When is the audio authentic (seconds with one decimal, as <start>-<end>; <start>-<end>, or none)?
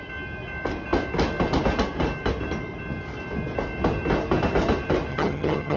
0.0-5.1